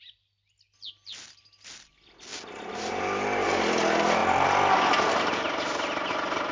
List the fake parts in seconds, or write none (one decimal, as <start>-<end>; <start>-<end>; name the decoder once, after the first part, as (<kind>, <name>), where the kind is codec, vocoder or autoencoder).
none